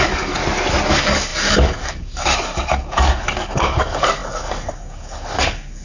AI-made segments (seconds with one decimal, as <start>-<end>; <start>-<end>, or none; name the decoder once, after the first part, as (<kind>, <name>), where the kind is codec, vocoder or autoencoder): 0.0-0.4 (codec, DAC); 0.9-5.8